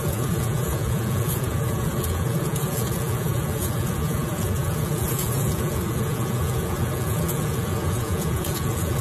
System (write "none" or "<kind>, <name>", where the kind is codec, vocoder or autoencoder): vocoder, Vocos